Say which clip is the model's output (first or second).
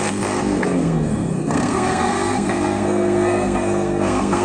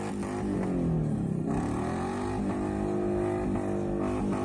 first